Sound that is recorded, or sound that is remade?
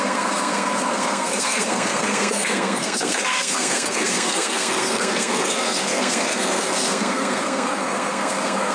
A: remade